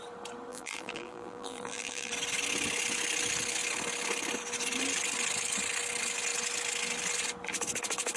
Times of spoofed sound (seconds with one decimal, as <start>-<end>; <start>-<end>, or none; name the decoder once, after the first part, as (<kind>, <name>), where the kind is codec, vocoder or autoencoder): 0.5-2.1 (vocoder, BigVGAN v2)